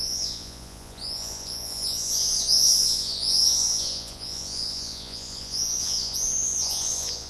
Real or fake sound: fake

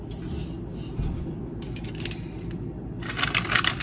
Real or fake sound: real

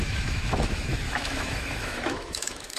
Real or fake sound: fake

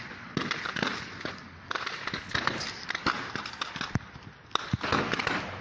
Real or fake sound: real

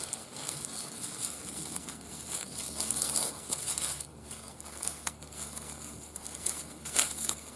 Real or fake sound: fake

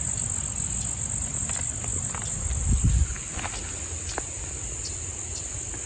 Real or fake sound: real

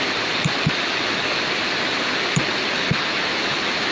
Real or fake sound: real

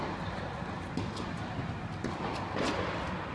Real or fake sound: real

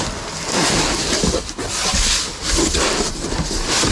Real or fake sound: real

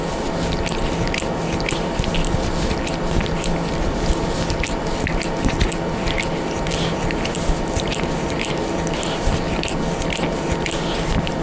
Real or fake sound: real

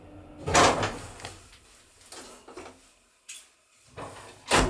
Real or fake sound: real